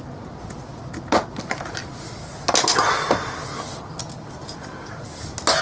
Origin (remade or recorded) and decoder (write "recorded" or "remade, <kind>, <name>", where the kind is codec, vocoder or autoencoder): recorded